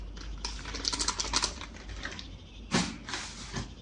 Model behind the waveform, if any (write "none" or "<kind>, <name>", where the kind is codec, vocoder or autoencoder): none